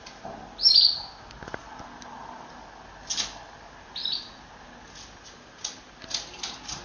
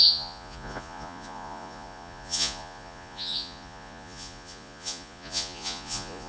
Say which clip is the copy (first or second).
second